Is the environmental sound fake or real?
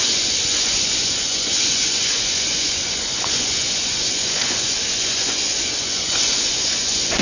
fake